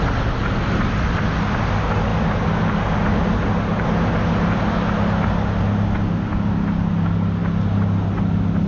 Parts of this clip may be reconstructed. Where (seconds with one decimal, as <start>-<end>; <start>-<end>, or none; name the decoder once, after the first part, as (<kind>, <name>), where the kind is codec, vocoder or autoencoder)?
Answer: none